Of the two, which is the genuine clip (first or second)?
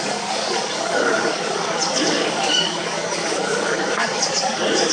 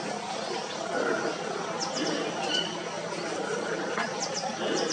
second